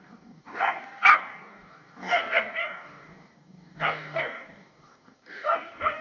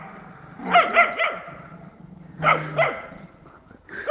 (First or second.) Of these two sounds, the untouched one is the second